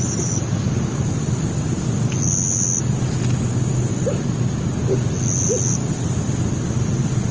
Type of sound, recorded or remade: recorded